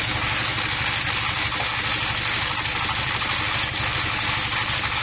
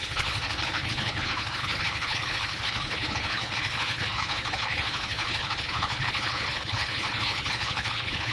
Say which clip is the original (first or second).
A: first